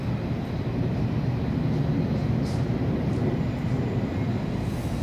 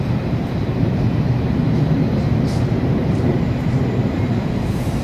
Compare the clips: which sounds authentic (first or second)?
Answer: first